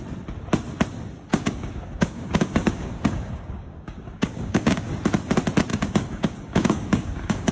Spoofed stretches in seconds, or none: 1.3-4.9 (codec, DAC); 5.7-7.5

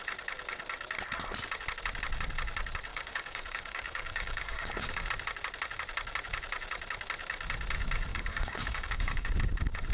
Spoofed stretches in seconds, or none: 2.9-5.1 (codec, DAC); 8.1-9.3

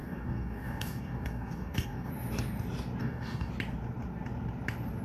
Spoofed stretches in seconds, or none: 0.0-2.1 (codec, DAC); 3.0-3.5

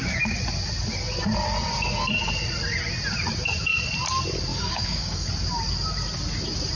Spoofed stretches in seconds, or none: 4.5-5.3 (codec, DAC)